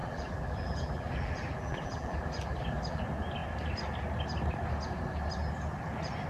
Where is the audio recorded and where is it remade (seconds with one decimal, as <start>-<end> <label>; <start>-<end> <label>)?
0.0-3.0 remade; 3.0-6.3 recorded

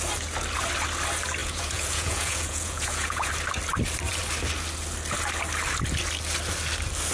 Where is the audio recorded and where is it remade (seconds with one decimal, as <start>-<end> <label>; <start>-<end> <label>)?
0.0-1.4 recorded; 1.4-3.3 remade; 3.3-7.1 recorded